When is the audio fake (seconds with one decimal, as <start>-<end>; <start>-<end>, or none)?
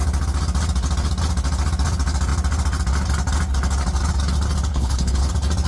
4.7-5.3